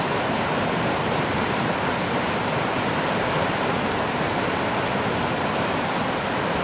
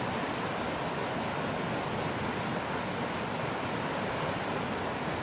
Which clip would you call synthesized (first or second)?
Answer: first